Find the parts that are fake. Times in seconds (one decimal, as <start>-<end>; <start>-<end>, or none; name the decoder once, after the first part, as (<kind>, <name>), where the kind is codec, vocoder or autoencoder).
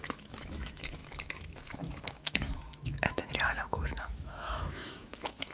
0.0-5.5 (autoencoder, DAC-VAE)